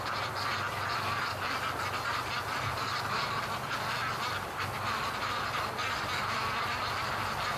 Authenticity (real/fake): real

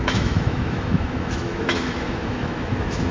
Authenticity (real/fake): fake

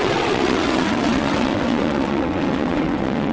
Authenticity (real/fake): fake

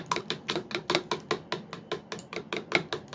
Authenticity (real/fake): real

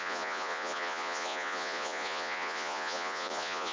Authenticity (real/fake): fake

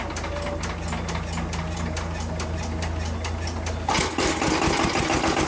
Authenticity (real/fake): real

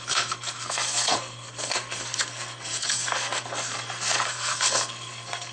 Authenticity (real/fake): fake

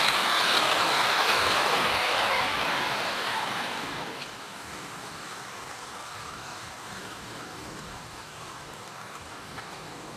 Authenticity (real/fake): fake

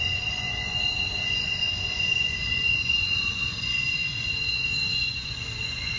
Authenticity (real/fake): fake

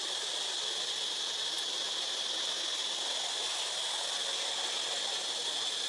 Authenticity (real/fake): real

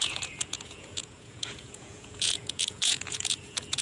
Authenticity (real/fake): fake